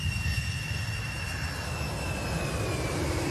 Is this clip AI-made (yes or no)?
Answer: no